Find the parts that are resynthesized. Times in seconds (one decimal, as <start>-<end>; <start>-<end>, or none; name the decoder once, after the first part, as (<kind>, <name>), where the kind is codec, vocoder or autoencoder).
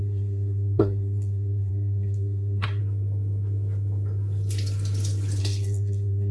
0.0-2.8 (codec, SNAC); 5.4-6.3